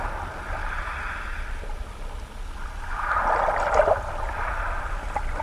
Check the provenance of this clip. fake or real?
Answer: real